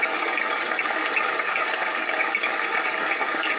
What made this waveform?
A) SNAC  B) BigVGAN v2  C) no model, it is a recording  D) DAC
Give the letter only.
D